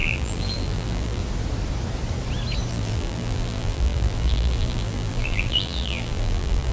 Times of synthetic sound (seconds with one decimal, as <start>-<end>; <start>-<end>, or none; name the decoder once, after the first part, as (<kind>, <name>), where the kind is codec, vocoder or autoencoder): 0.0-1.2 (vocoder, BigVGAN v2); 2.7-6.7